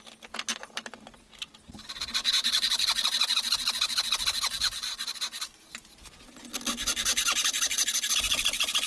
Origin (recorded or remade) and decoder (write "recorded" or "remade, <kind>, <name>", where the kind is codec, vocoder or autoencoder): recorded